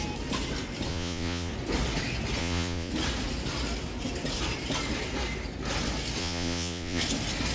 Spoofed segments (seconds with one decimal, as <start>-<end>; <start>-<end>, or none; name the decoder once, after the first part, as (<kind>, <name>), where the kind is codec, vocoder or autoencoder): 0.9-1.5 (vocoder, Vocos); 2.4-2.9; 6.2-7.0